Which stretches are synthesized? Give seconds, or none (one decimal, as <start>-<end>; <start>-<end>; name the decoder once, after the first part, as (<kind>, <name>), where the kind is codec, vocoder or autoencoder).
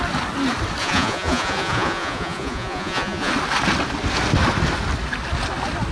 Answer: 0.8-3.3 (vocoder, Vocos)